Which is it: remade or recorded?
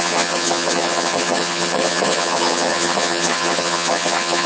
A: remade